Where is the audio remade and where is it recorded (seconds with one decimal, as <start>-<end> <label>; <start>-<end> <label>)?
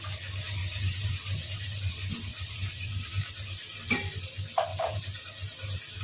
0.0-0.6 recorded; 0.6-1.9 remade; 1.9-2.3 recorded; 2.3-4.1 remade; 4.1-4.7 recorded; 4.7-6.0 remade